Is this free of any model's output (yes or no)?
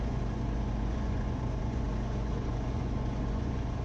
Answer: no